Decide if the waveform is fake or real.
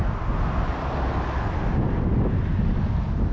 real